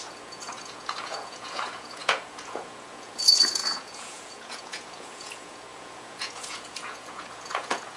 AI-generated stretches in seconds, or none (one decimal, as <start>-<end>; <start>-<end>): 0.0-8.0